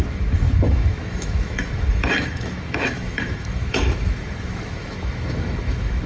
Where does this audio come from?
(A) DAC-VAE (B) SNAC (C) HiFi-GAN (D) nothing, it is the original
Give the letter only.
A